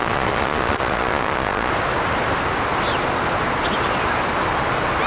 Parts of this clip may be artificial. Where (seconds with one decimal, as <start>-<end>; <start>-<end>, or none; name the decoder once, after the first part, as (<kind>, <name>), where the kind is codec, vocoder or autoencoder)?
0.0-1.7 (vocoder, Vocos)